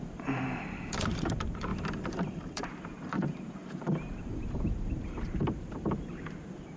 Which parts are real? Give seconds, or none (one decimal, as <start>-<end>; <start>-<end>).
1.7-2.2